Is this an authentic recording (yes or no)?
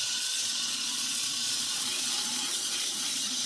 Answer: no